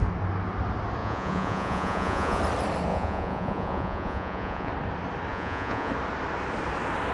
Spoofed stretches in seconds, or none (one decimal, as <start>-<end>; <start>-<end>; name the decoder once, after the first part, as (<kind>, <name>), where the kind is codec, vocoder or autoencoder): 1.0-2.4 (vocoder, Vocos); 2.9-4.7; 5.3-5.9